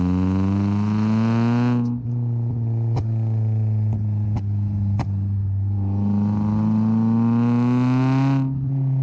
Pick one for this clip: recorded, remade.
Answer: recorded